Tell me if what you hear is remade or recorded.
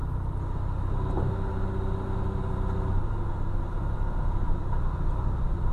recorded